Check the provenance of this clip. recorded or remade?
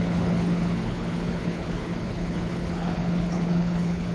remade